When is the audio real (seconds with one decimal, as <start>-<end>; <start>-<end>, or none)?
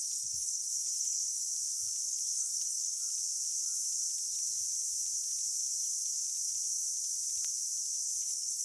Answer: 1.5-2.1; 3.0-8.2